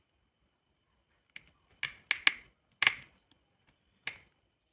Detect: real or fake real